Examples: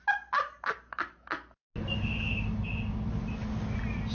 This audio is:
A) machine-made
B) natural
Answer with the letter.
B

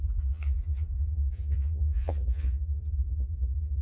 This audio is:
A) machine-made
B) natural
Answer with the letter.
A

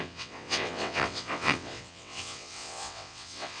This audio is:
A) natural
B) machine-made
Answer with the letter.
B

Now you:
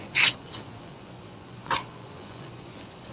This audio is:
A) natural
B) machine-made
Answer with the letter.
B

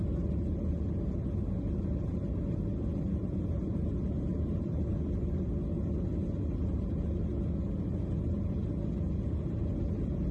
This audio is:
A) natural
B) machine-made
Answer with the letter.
A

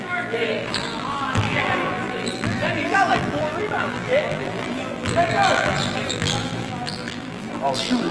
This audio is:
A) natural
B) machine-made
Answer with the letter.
B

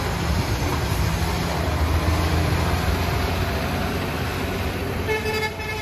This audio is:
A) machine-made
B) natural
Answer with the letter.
B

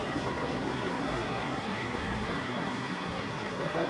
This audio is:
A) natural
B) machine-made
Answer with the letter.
B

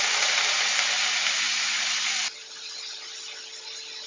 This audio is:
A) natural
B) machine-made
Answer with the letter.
A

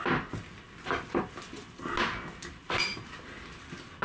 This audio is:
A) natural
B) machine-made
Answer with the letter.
A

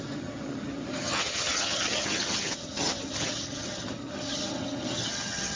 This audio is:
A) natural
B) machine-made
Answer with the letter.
B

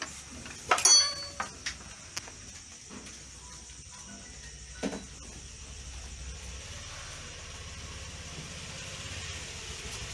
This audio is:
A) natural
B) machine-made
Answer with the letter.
A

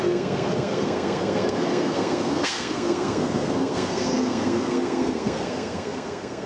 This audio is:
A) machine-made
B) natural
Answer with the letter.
A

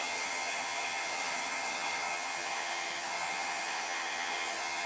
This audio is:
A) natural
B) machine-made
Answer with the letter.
B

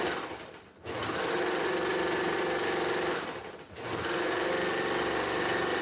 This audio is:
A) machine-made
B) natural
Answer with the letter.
B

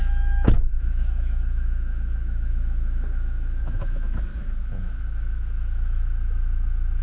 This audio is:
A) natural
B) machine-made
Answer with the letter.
B